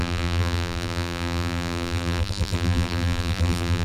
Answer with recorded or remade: remade